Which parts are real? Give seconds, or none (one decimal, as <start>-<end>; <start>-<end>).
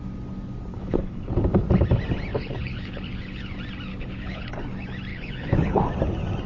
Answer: 0.0-0.7; 1.4-2.3; 3.5-3.9; 4.5-5.1; 5.8-6.5